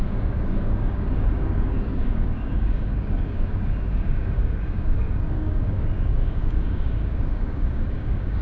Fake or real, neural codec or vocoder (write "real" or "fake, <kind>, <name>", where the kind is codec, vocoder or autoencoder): fake, codec, DAC